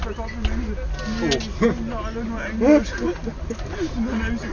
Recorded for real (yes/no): yes